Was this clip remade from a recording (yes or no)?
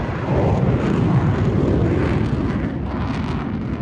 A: no